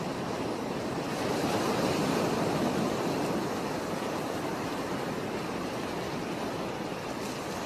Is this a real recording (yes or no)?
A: yes